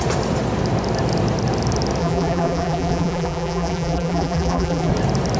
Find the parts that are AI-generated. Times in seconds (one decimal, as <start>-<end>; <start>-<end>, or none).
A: 2.0-4.9